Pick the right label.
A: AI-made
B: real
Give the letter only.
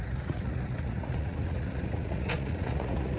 A